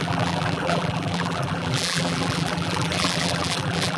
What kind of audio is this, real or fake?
fake